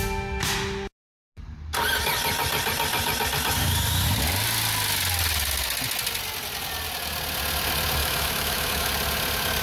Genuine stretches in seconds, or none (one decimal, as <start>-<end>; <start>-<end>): 0.0-8.0; 8.9-9.6